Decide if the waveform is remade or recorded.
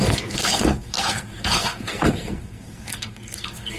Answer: remade